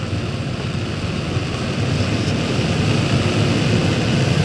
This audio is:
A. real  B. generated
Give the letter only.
A